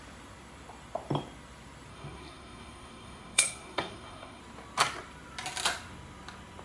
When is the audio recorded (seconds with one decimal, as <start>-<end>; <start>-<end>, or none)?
0.0-1.9; 4.4-6.6